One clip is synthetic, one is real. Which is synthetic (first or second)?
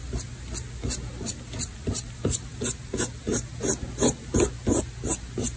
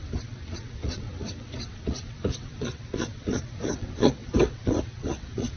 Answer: second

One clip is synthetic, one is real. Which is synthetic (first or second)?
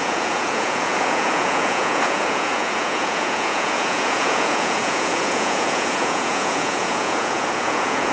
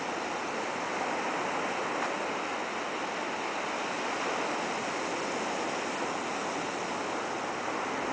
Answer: first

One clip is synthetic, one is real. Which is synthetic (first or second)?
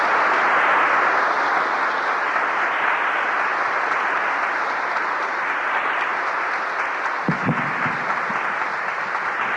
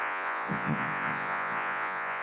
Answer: second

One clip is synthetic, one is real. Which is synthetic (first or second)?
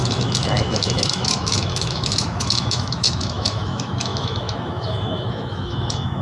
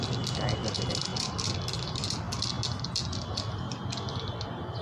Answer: first